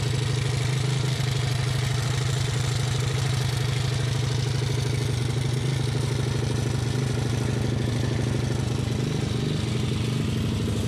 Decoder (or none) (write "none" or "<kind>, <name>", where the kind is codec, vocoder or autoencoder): none